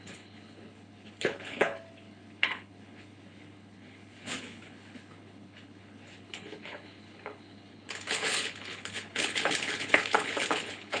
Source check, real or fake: fake